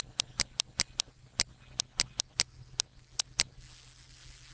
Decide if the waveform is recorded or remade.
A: recorded